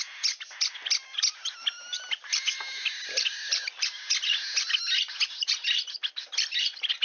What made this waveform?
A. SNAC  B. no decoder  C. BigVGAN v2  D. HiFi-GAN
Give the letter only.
B